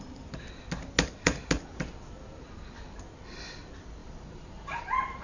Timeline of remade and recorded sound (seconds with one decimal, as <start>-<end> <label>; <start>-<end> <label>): 0.0-4.0 recorded; 4.0-4.8 remade; 4.8-5.2 recorded